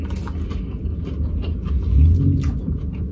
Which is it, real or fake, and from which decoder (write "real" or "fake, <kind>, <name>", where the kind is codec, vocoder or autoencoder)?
real